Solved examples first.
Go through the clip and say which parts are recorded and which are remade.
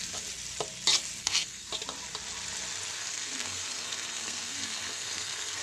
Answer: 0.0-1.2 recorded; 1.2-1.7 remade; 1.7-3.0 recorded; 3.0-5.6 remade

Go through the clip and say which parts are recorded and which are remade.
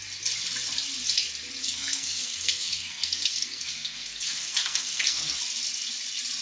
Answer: 0.0-1.6 recorded; 1.6-5.4 remade; 5.4-6.4 recorded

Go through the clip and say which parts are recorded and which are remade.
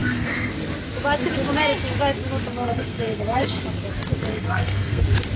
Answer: 0.0-0.5 remade; 0.5-2.5 recorded; 2.5-3.6 remade; 3.6-4.3 recorded; 4.3-5.0 remade; 5.0-5.4 recorded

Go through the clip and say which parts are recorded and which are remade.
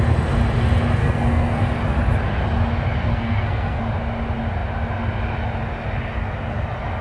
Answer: 0.0-1.0 recorded; 1.0-1.6 remade; 1.6-3.1 recorded; 3.1-3.8 remade; 3.8-7.0 recorded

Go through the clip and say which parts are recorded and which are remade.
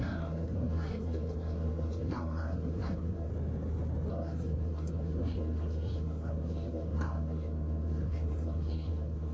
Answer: 0.0-3.3 remade; 3.3-4.1 recorded; 4.1-9.3 remade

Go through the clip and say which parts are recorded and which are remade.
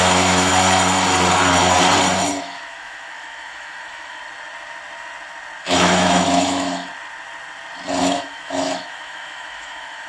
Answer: 0.0-0.5 remade; 0.5-2.4 recorded; 2.4-4.2 remade; 4.2-5.6 recorded; 5.6-6.9 remade; 6.9-8.0 recorded; 8.0-10.1 remade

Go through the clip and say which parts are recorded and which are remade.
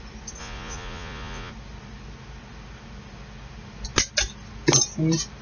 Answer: 0.0-0.4 recorded; 0.4-1.5 remade; 1.5-5.4 recorded